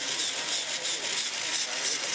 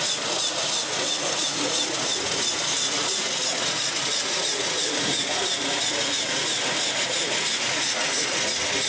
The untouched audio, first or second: first